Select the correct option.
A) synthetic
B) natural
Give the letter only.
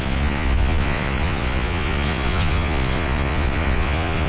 A